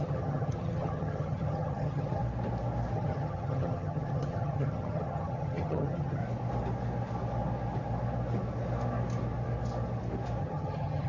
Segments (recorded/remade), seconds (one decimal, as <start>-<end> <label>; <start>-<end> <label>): 0.0-2.2 remade; 2.2-2.9 recorded; 2.9-6.2 remade; 6.2-10.4 recorded; 10.4-11.1 remade